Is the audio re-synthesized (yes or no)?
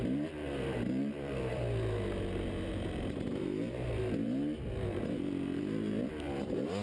yes